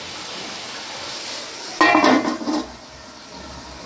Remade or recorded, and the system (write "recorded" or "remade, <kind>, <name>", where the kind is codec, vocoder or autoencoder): recorded